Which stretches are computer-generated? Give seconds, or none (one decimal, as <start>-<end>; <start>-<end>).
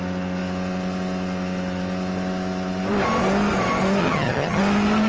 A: 4.0-4.6